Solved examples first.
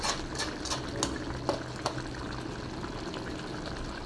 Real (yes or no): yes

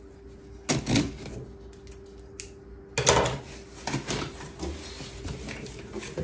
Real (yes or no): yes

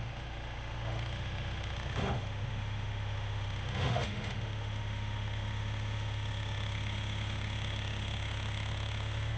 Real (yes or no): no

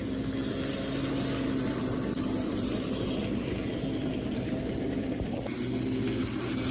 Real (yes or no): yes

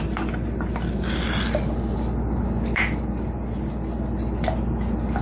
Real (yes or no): yes